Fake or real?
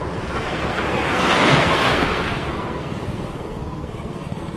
fake